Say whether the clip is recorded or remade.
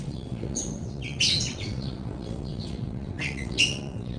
remade